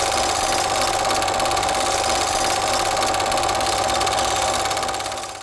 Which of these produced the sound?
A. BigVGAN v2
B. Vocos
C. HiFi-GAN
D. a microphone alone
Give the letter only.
D